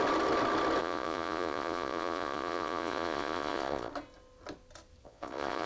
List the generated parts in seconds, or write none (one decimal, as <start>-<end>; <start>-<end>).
0.8-3.9; 5.0-5.7